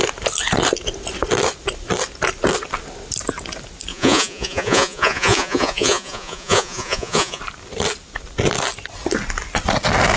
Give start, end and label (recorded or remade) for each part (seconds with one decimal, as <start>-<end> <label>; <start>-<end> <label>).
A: 0.0-3.9 recorded; 3.9-7.4 remade; 7.4-10.2 recorded